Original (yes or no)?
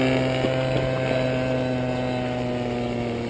yes